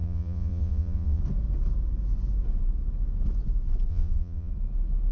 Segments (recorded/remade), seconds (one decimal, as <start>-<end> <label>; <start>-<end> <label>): 0.0-1.2 remade; 1.2-3.9 recorded; 3.9-4.5 remade; 4.5-5.1 recorded